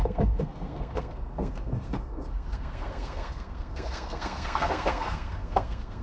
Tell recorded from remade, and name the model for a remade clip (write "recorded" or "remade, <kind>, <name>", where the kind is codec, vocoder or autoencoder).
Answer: remade, codec, SNAC